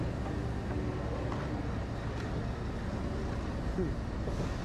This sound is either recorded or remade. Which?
recorded